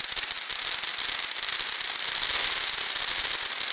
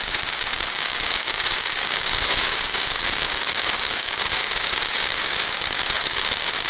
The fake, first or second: second